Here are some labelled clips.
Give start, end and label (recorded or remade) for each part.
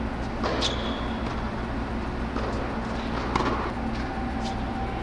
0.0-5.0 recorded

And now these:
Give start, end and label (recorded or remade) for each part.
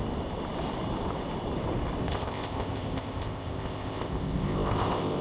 0.0-2.0 recorded; 2.0-5.2 remade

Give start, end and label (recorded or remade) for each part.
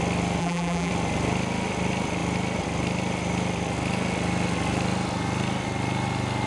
0.0-0.4 recorded; 0.4-0.9 remade; 0.9-6.5 recorded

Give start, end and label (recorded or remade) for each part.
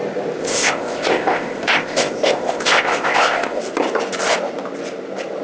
0.0-0.4 recorded; 0.4-3.6 remade; 3.6-5.4 recorded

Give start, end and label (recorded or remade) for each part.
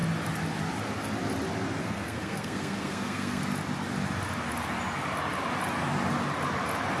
0.0-1.8 recorded; 1.8-3.4 remade; 3.4-7.0 recorded